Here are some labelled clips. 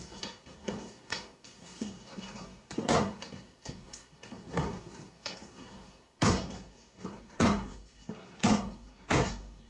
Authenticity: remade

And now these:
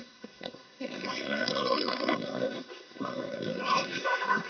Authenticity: remade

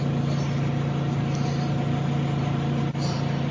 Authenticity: recorded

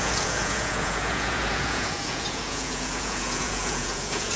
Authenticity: remade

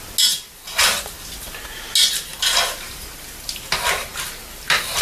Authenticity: recorded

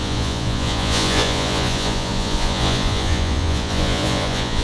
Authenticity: remade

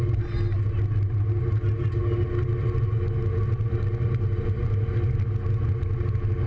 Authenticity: recorded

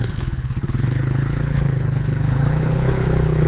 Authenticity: remade